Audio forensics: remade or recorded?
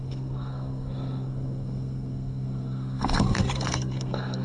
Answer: remade